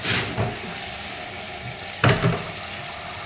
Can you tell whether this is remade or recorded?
recorded